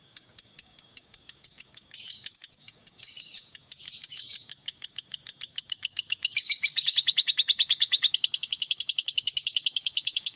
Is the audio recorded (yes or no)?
no